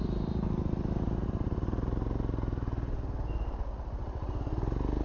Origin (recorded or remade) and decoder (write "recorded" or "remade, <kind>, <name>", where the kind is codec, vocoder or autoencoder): recorded